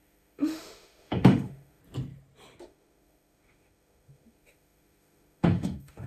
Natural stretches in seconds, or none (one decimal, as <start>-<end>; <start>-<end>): 1.8-2.6